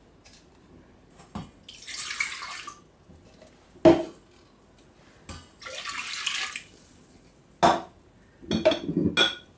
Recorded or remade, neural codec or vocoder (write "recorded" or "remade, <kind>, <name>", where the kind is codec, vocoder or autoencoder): recorded